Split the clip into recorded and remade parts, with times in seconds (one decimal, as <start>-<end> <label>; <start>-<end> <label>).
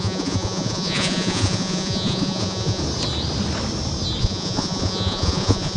0.0-2.8 remade; 2.8-4.2 recorded; 4.2-5.8 remade